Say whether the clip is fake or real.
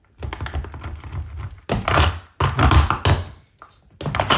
real